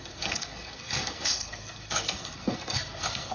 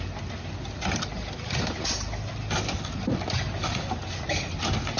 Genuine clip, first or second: second